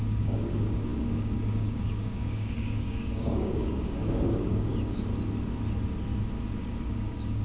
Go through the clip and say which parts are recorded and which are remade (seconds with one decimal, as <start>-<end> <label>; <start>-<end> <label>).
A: 0.0-5.1 remade; 5.1-6.9 recorded; 6.9-7.4 remade